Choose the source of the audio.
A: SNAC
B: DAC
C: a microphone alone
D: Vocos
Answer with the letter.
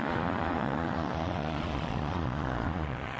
D